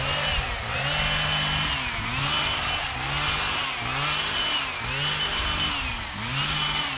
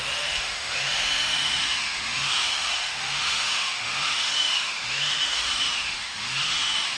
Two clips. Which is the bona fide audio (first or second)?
first